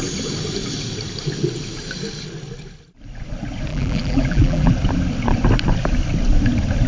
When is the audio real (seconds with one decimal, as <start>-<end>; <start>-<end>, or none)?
0.0-3.7; 4.7-6.9

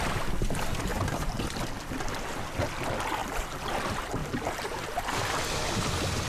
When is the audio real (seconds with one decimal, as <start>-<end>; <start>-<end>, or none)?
0.0-0.9; 1.6-3.2; 3.7-4.2; 4.8-6.3